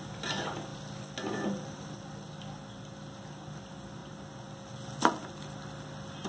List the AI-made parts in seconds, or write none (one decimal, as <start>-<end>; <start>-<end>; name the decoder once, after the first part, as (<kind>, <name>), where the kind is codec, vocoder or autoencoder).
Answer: none